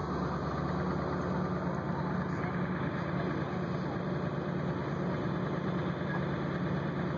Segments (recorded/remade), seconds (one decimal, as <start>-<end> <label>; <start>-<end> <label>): 0.0-7.2 recorded